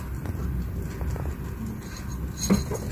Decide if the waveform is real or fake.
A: real